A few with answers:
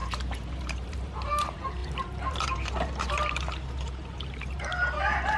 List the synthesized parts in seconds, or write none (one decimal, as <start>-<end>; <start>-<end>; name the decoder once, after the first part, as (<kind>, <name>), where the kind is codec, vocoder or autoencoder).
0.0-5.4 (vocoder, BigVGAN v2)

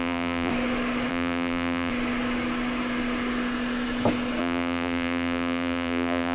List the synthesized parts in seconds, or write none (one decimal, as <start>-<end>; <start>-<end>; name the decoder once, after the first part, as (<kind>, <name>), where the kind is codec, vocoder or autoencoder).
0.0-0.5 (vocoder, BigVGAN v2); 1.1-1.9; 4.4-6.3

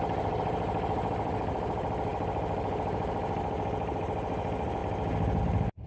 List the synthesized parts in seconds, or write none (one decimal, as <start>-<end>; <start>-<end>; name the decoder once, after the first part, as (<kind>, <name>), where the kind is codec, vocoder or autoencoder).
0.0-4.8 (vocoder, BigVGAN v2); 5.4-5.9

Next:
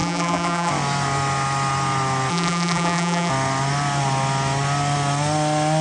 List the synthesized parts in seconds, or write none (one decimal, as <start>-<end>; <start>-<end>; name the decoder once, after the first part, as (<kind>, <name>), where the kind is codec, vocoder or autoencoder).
0.0-0.7 (vocoder, BigVGAN v2); 2.3-3.3

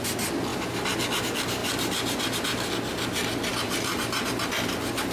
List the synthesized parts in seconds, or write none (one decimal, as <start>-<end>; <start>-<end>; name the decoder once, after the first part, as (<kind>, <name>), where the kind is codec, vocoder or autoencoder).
0.5-1.2 (vocoder, BigVGAN v2); 1.6-2.7; 3.5-4.2